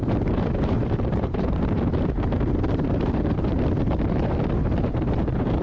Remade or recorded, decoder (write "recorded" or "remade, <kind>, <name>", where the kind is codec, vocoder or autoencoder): remade, vocoder, BigVGAN v2